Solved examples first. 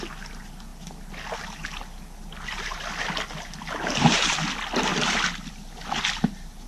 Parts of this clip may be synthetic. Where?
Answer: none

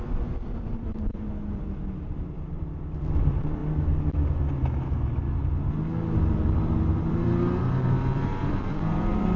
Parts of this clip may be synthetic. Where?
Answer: 0.0-1.1 (vocoder, BigVGAN v2); 3.2-3.6; 6.2-9.4

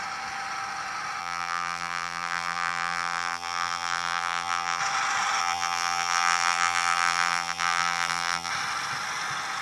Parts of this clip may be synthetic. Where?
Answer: 1.2-4.8 (vocoder, BigVGAN v2); 5.4-8.5

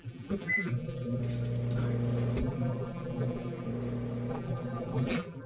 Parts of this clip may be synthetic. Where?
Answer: 0.0-1.2 (vocoder, BigVGAN v2); 2.4-3.7; 4.3-5.5